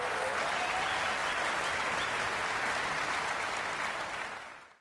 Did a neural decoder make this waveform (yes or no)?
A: no